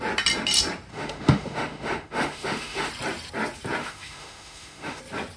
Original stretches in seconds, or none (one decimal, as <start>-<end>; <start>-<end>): 0.0-0.9; 2.9-3.8; 5.0-5.4